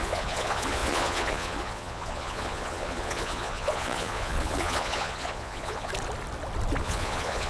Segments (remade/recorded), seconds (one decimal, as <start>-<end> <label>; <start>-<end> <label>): 0.0-5.9 remade; 5.9-6.8 recorded; 6.8-7.5 remade

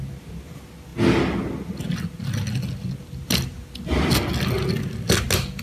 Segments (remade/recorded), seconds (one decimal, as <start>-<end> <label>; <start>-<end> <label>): 0.0-5.6 recorded

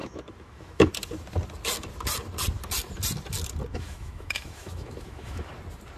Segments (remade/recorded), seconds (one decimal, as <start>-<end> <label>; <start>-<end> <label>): 0.0-0.9 remade; 0.9-3.7 recorded; 3.7-5.5 remade; 5.5-6.0 recorded

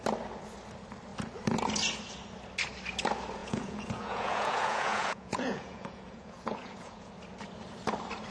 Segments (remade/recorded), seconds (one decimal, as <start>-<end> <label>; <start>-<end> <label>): 0.0-3.4 recorded; 3.4-7.1 remade; 7.1-8.3 recorded

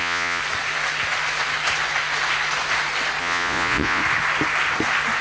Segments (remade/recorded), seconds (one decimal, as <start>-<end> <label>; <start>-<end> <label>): 0.0-0.4 remade; 0.4-3.2 recorded; 3.2-4.0 remade; 4.0-5.2 recorded

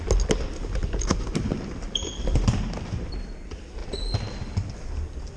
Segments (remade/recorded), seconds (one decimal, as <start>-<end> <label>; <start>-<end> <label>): 0.0-0.8 recorded; 0.8-2.5 remade; 2.5-3.8 recorded; 3.8-4.9 remade; 4.9-5.4 recorded

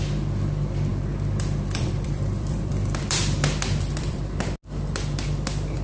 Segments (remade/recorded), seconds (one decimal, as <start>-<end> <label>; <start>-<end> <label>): 0.0-0.9 recorded; 0.9-4.4 remade; 4.4-5.8 recorded